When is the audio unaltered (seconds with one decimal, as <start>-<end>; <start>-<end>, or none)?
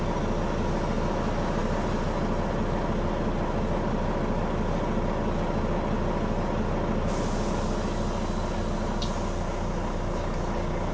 0.0-10.9